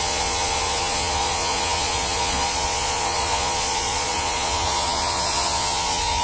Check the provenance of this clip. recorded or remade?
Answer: remade